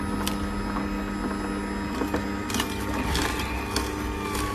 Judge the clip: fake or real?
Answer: real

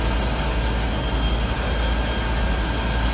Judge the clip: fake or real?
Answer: real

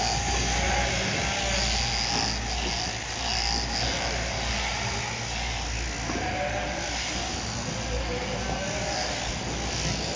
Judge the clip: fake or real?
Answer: real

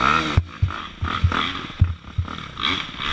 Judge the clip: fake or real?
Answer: real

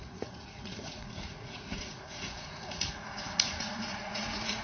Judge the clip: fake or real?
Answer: fake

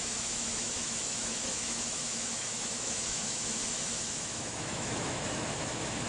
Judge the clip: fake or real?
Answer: fake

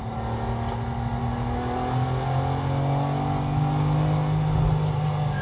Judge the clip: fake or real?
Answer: real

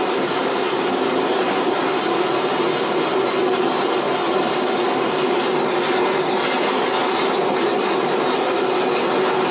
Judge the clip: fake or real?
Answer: real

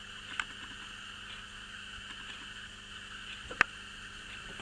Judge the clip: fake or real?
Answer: real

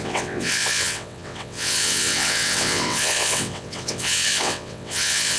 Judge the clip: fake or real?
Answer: fake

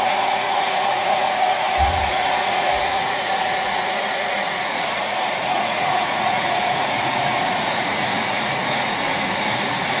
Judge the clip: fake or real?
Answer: fake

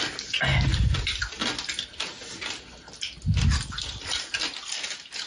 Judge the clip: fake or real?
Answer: real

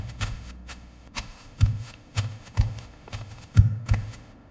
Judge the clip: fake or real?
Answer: fake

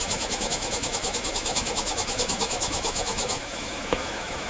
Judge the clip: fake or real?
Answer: fake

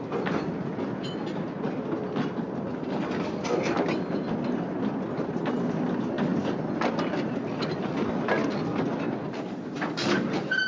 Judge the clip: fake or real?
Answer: real